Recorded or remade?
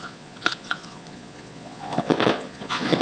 remade